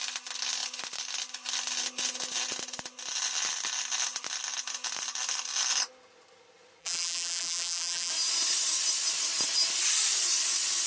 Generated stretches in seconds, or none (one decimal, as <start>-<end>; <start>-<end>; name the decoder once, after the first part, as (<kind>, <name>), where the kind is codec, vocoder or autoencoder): 6.8-8.1 (vocoder, BigVGAN v2)